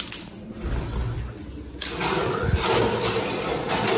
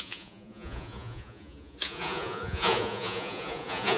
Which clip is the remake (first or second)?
second